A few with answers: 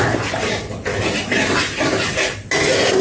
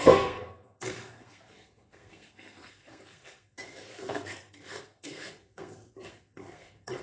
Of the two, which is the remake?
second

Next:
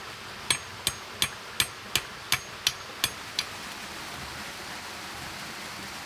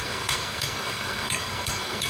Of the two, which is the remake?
second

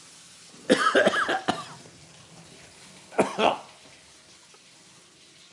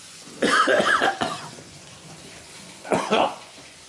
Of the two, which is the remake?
second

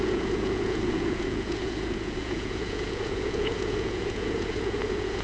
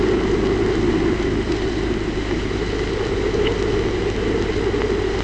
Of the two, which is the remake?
first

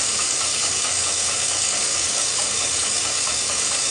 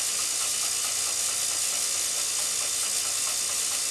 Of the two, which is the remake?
first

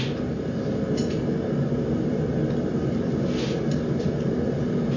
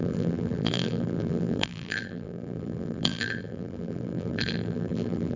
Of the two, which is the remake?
second